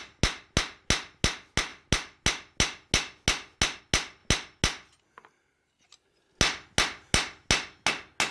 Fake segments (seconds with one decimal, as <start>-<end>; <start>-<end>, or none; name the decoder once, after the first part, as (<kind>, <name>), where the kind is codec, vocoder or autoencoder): none